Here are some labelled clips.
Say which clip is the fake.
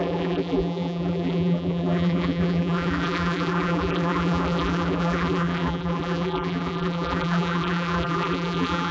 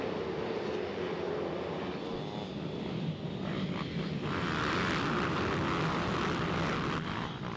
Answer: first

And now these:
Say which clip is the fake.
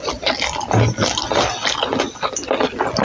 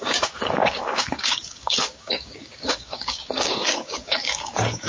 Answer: second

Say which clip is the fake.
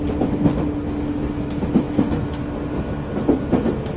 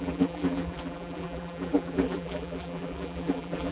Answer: second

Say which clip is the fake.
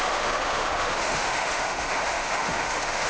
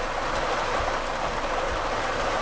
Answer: first